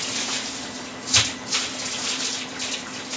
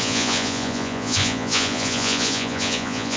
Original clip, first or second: first